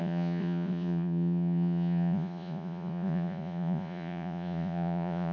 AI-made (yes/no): yes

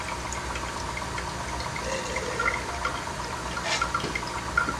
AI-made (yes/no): no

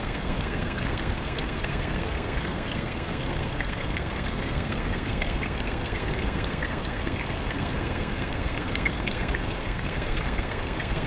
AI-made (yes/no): yes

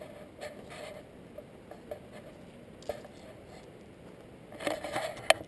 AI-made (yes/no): no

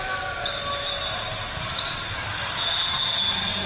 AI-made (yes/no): no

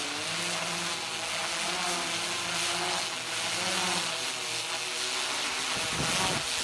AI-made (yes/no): no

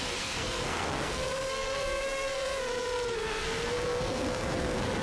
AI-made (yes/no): yes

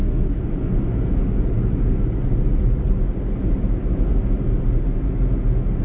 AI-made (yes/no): no